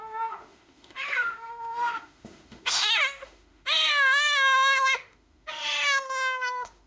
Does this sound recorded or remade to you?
remade